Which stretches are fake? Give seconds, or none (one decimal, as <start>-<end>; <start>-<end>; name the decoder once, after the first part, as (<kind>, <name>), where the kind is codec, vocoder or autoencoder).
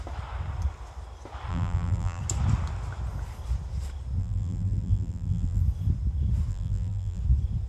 1.5-2.2 (vocoder, BigVGAN v2); 4.2-5.6; 6.5-7.2